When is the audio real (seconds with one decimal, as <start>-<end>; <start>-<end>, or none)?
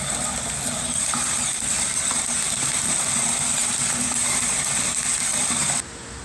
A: 0.0-6.2